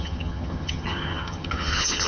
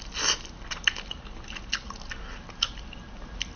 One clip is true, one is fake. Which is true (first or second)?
second